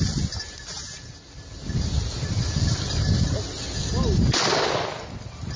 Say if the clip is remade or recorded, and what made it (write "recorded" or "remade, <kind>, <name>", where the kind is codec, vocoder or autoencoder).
recorded